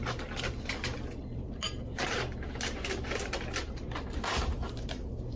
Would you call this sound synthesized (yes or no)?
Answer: yes